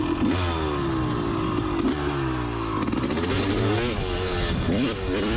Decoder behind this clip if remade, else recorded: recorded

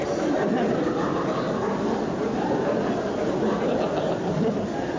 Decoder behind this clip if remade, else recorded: recorded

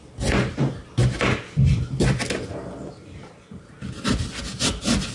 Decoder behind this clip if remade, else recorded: recorded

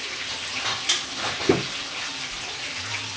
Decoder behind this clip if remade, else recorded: recorded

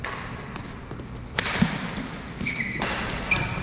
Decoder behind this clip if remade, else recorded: recorded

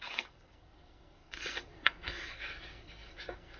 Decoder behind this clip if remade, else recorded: remade, codec, SNAC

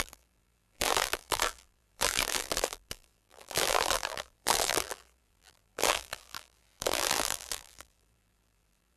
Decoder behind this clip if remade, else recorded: remade, vocoder, BigVGAN v2